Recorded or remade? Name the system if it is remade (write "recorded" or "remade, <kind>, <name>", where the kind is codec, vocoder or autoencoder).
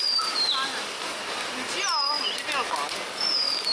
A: recorded